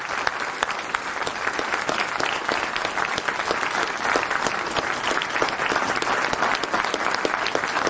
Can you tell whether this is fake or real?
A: real